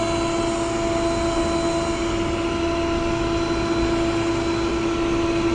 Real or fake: real